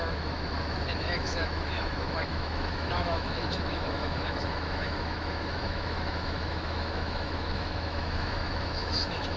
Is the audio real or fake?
fake